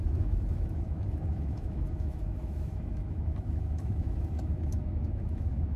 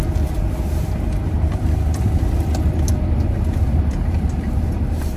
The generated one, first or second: first